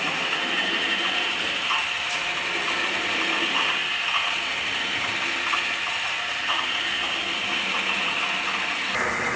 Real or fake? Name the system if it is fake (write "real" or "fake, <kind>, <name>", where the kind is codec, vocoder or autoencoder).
real